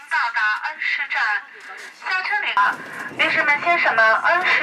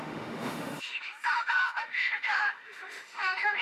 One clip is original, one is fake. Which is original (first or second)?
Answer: first